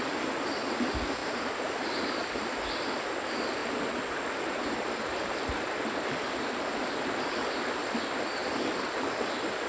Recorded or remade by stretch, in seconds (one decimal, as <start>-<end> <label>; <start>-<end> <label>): 0.0-1.2 recorded; 1.2-2.5 remade; 2.5-3.6 recorded; 3.6-7.9 remade; 7.9-8.4 recorded; 8.4-8.9 remade; 8.9-9.7 recorded